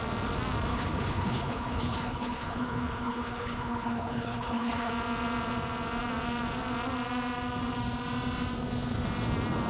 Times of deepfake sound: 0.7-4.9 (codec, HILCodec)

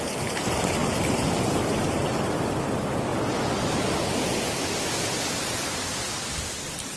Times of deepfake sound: none